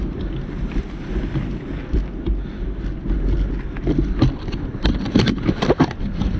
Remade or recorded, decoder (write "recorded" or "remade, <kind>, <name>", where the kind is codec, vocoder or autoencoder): recorded